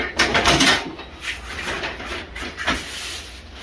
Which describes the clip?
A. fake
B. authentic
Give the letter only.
B